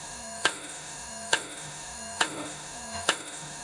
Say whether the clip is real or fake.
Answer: fake